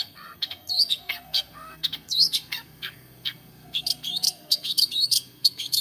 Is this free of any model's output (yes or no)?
no